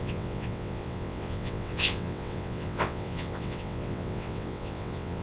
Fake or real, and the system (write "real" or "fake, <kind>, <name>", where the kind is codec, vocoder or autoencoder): fake, vocoder, WaveNeXt